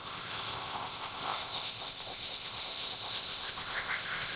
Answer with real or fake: fake